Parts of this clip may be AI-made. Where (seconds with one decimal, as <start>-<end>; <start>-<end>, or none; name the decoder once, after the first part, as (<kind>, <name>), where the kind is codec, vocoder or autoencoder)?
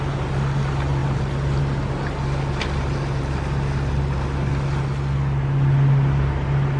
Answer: none